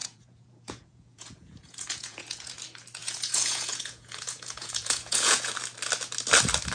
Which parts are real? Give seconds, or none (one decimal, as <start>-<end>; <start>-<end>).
2.5-3.0; 5.5-6.7